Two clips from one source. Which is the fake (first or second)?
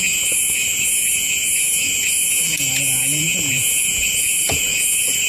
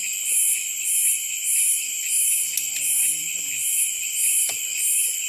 first